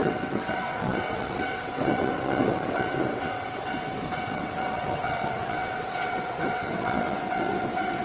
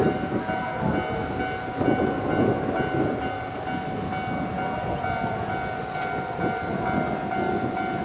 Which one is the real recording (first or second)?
second